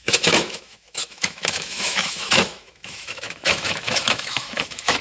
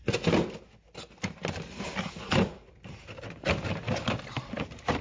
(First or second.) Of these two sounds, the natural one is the second